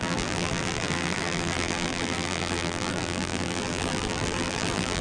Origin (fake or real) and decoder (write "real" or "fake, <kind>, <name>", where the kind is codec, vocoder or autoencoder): fake, vocoder, BigVGAN v2